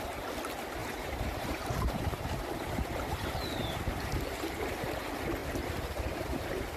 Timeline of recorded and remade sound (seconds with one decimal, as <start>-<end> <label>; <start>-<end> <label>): 0.0-0.8 recorded; 0.8-4.9 remade; 4.9-5.4 recorded; 5.4-6.8 remade